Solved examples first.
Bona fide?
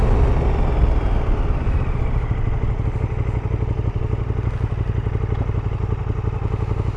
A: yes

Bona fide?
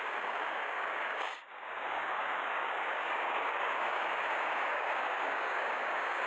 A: no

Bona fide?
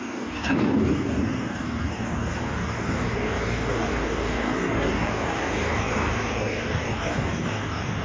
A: no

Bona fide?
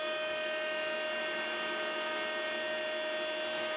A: yes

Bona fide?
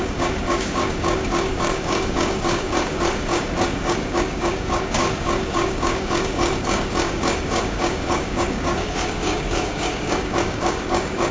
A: no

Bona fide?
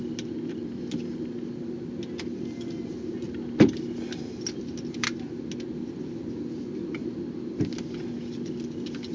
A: yes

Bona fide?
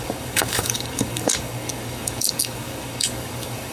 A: no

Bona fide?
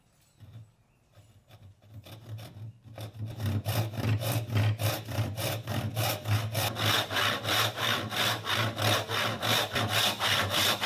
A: yes